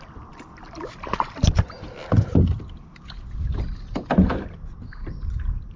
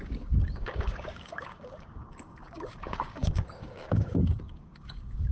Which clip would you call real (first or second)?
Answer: first